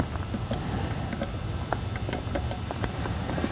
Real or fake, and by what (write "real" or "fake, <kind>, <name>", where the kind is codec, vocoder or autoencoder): real